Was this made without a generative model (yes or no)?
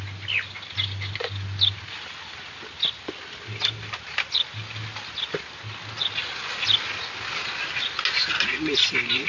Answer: yes